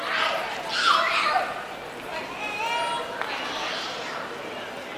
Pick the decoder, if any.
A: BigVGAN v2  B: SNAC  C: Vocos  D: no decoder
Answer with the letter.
D